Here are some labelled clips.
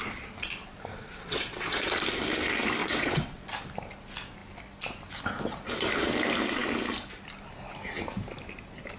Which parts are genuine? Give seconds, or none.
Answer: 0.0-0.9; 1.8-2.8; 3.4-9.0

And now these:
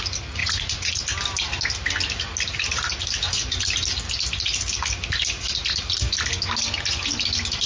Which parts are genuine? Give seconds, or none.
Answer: 0.0-0.4; 1.0-7.7

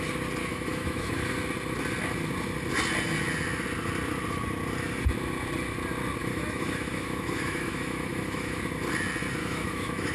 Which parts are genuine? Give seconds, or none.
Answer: 0.0-0.5; 1.3-6.2; 8.6-9.4

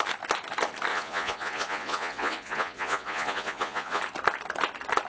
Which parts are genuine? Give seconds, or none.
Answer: 0.0-0.9; 4.0-5.1

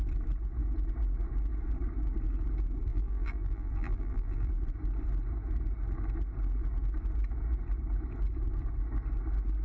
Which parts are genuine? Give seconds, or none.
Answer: 0.0-2.9; 4.5-9.6

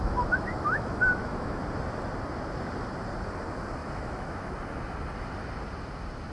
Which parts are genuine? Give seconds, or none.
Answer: 1.6-3.8; 4.5-6.3

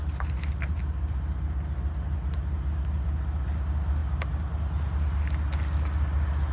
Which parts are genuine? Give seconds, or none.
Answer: 0.8-6.5